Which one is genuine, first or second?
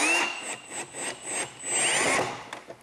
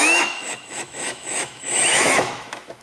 first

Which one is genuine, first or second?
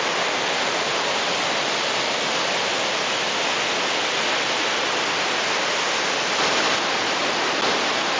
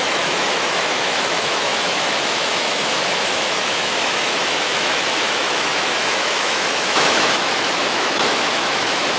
first